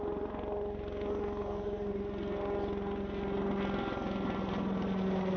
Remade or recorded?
recorded